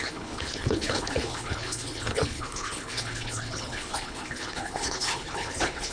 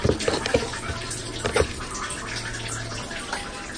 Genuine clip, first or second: second